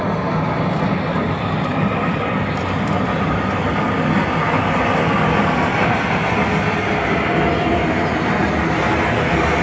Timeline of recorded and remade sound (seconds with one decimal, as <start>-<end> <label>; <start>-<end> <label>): 0.0-1.7 recorded; 1.7-3.2 remade; 3.2-9.6 recorded